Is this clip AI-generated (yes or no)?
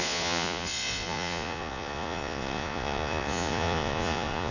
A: yes